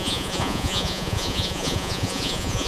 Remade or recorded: remade